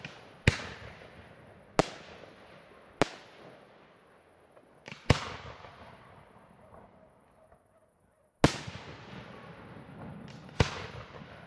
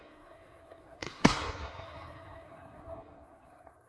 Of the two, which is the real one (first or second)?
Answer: first